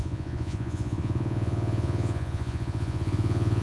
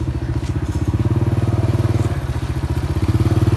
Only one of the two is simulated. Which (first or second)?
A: first